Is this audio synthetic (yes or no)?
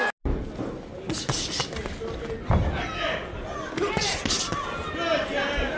no